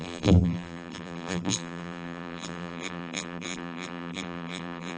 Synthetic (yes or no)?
yes